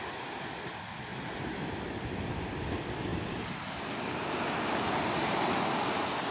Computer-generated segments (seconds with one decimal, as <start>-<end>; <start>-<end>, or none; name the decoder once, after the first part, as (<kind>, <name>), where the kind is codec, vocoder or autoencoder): none